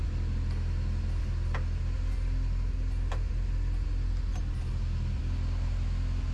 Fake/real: real